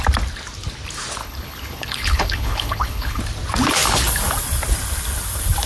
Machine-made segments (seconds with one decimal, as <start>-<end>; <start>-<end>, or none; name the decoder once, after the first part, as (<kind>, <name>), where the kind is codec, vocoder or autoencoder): 1.2-3.2 (codec, HILCodec)